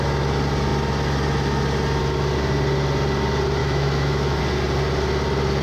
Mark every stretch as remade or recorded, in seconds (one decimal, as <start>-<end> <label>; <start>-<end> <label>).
0.0-3.6 recorded; 3.6-4.4 remade; 4.4-5.6 recorded